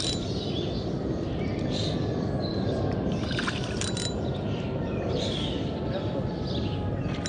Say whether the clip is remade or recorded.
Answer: recorded